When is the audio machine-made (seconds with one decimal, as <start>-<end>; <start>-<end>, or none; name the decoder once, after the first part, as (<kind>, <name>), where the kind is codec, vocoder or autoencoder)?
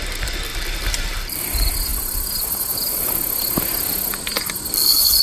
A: 0.5-1.4 (vocoder, BigVGAN v2)